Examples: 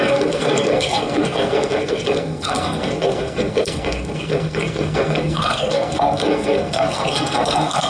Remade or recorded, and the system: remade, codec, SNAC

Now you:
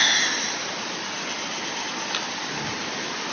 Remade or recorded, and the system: recorded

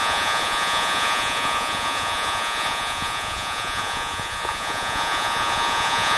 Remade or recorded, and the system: remade, vocoder, Vocos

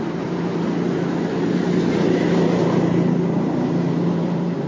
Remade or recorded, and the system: recorded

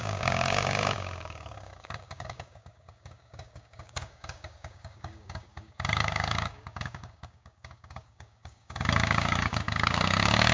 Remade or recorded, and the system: remade, codec, DAC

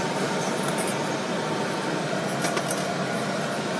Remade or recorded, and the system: recorded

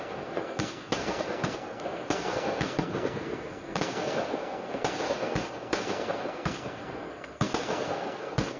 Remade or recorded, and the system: remade, codec, SNAC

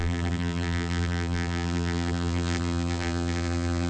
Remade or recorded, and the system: remade, vocoder, BigVGAN v2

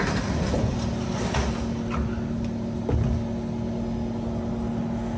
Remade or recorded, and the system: recorded